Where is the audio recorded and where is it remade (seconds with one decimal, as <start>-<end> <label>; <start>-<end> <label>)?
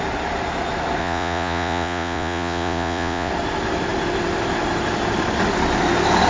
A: 0.0-1.0 recorded; 1.0-3.3 remade; 3.3-6.3 recorded